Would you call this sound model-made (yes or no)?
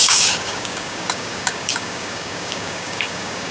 yes